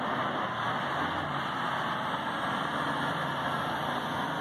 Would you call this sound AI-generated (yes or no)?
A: no